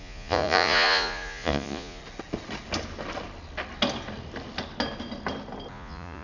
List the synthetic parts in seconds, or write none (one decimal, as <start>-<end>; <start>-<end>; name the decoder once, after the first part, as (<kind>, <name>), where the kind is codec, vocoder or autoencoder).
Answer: 0.0-2.0 (vocoder, Vocos); 5.7-6.2